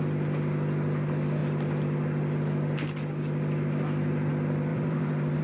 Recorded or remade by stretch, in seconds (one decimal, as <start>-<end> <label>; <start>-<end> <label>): 0.0-4.7 recorded; 4.7-5.4 remade